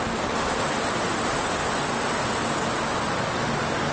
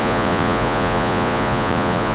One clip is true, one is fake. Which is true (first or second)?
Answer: first